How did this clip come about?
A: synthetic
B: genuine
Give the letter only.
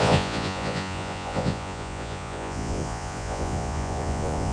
A